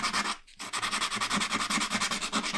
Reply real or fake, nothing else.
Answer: real